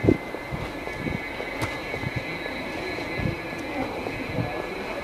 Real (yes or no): yes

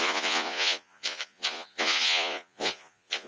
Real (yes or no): no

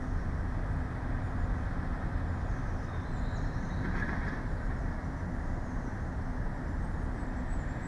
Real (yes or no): yes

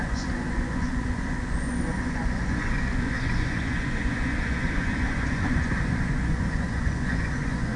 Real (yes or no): no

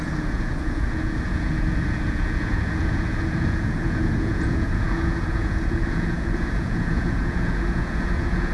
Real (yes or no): no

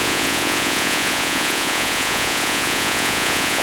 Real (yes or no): no